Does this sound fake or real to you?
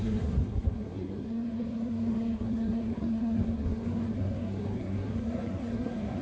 fake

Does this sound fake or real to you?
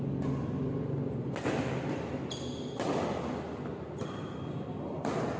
real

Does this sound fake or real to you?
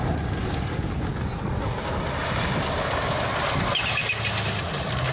real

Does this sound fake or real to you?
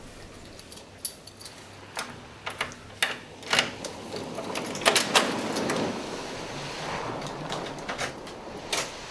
real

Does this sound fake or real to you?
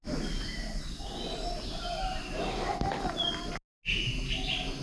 real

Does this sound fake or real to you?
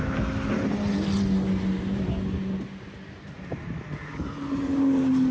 real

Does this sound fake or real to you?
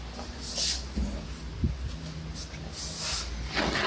real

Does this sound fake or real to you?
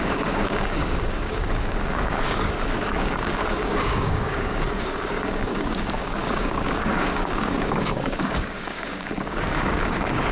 fake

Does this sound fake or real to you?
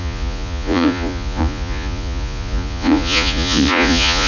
fake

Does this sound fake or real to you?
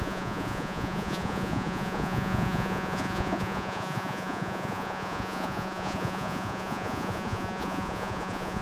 fake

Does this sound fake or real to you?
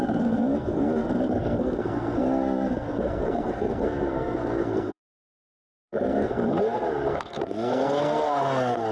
fake